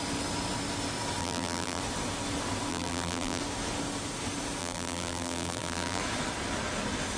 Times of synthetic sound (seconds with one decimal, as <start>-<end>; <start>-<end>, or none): 1.2-1.8; 2.7-3.4; 4.6-6.0